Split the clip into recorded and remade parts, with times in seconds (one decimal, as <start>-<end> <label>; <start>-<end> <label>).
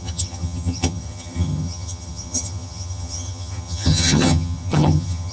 0.0-5.3 remade